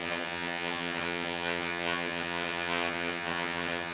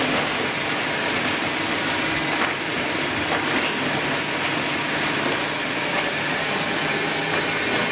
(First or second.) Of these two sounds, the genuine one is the second